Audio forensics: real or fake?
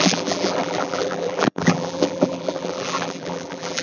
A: fake